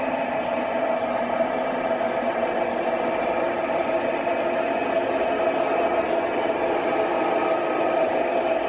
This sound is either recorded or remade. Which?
recorded